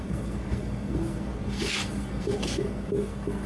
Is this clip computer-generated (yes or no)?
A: yes